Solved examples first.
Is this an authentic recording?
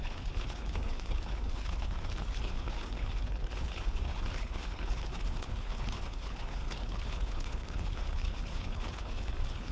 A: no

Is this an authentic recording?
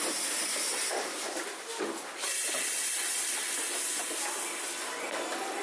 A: yes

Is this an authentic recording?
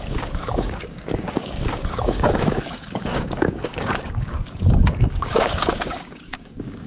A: no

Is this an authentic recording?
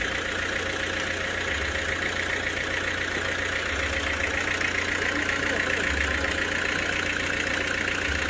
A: yes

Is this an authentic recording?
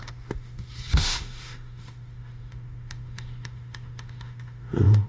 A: no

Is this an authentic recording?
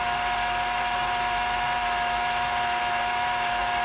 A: yes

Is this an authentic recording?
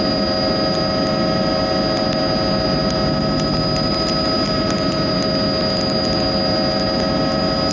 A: yes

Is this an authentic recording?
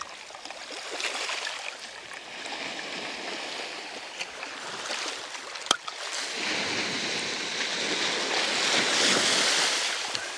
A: yes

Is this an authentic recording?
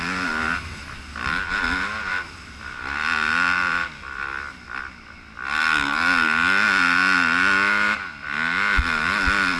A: yes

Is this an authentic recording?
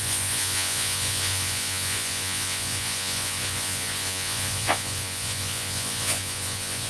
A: no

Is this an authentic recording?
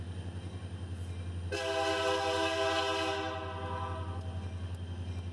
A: yes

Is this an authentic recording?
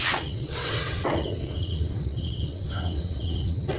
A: no